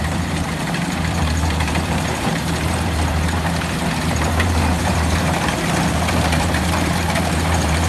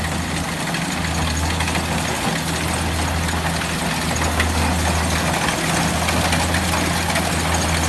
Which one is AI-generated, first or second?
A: first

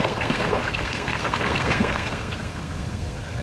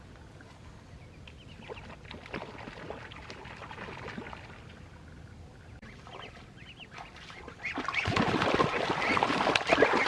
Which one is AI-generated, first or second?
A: first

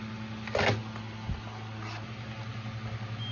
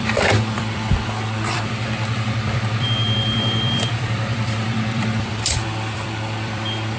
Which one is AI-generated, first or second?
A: second